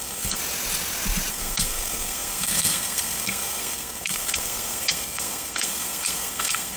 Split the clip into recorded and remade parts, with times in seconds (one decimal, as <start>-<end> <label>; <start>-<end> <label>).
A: 0.0-0.4 remade; 0.4-1.3 recorded; 1.3-6.8 remade